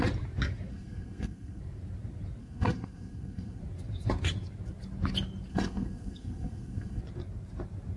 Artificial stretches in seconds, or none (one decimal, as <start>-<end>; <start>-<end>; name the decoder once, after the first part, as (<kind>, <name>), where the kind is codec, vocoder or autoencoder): 0.7-1.6 (codec, SNAC); 2.4-3.6; 5.5-7.0